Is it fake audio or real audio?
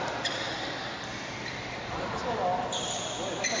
fake